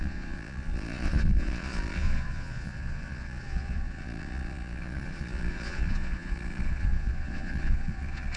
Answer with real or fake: fake